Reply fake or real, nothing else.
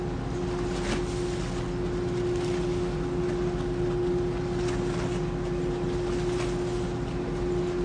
real